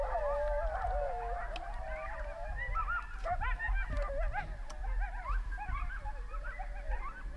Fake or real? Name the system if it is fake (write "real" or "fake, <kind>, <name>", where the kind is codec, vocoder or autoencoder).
real